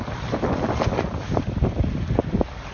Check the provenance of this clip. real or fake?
real